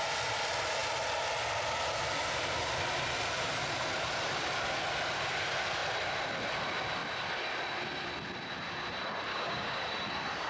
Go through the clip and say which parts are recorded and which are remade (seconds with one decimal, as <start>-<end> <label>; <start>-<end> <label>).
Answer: 0.0-9.3 recorded; 9.3-9.8 remade; 9.8-10.5 recorded

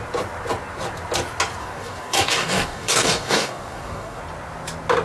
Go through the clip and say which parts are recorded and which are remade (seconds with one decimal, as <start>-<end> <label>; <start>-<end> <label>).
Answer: 0.0-1.6 recorded; 1.6-4.2 remade; 4.2-5.0 recorded

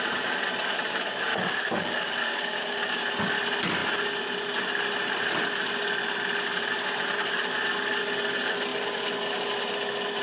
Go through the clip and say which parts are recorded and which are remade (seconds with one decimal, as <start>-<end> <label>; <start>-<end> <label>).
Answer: 0.0-1.3 recorded; 1.3-3.0 remade; 3.0-10.2 recorded

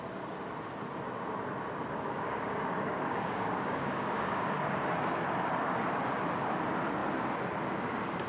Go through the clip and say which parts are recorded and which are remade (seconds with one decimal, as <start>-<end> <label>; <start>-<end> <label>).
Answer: 0.0-1.9 recorded; 1.9-4.7 remade; 4.7-8.3 recorded

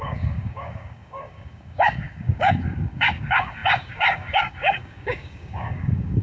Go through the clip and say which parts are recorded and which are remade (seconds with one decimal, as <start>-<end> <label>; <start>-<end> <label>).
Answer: 0.0-6.2 remade

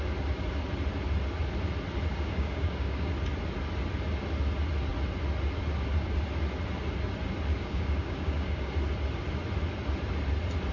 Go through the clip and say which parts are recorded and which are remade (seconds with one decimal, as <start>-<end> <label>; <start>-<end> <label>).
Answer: 0.0-2.1 recorded; 2.1-3.1 remade; 3.1-7.5 recorded; 7.5-8.7 remade; 8.7-10.7 recorded

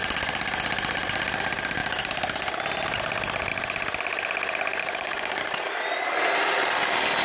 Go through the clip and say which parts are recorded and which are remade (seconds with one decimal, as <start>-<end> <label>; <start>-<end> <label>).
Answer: 0.0-4.8 recorded; 4.8-5.4 remade; 5.4-7.2 recorded